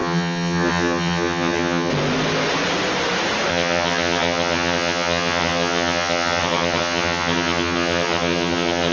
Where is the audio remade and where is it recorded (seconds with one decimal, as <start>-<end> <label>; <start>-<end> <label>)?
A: 0.0-1.9 remade; 1.9-3.5 recorded; 3.5-8.9 remade